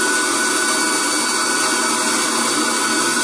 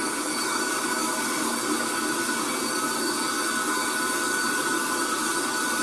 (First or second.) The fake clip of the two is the second